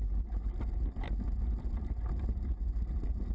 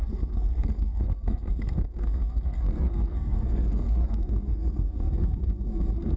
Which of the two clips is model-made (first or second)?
second